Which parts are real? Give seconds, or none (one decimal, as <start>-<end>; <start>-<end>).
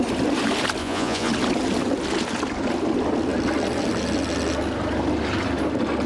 0.0-0.8; 1.3-6.1